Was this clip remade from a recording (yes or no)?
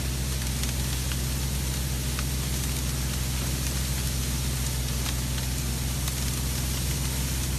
no